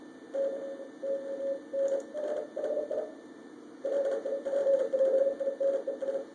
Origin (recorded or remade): recorded